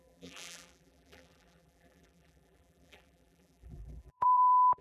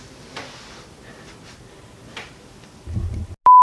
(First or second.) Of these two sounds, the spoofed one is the first